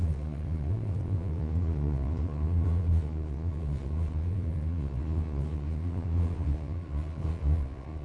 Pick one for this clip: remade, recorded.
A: remade